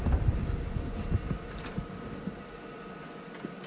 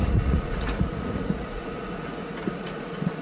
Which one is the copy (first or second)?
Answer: second